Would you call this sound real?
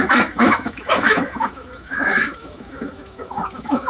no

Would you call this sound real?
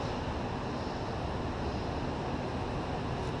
yes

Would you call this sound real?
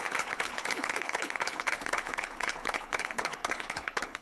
no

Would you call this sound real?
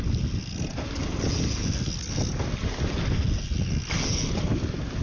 yes